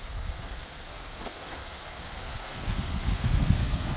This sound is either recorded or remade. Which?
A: remade